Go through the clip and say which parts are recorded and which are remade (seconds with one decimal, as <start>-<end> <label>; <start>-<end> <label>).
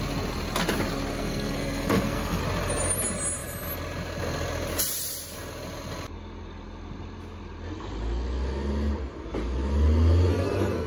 0.0-1.1 recorded; 1.1-2.4 remade; 2.4-10.3 recorded; 10.3-10.9 remade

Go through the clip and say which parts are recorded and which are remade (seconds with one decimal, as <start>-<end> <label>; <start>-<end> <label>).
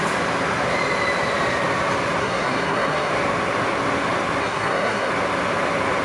0.0-2.2 recorded; 2.2-3.1 remade; 3.1-4.4 recorded; 4.4-5.1 remade; 5.1-6.0 recorded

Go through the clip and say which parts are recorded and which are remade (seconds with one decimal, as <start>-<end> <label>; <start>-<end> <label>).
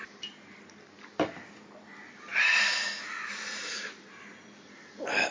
0.0-5.3 recorded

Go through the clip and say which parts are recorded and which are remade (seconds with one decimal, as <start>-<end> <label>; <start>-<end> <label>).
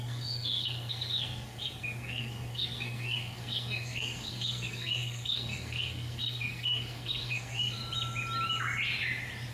0.0-7.8 remade; 7.8-9.5 recorded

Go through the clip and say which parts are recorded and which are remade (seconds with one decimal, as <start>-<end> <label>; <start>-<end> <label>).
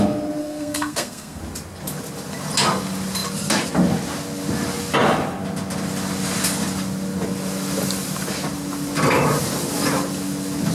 0.0-0.4 recorded; 0.4-1.4 remade; 1.4-10.7 recorded